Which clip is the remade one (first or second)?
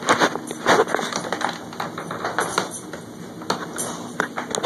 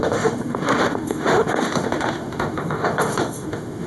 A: second